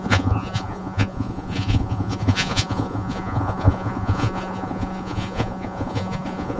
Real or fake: fake